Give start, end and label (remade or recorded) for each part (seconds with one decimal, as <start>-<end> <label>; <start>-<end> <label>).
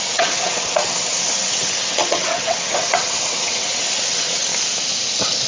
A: 0.0-4.5 remade; 4.5-5.5 recorded